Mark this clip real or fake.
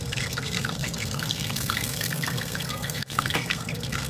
fake